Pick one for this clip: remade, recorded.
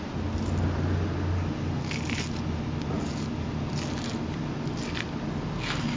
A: recorded